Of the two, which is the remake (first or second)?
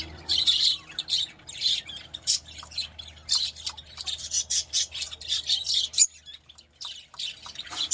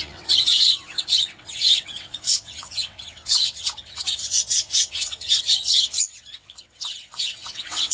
second